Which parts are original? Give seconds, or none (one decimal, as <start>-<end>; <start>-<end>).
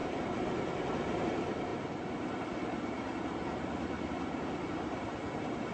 1.2-5.7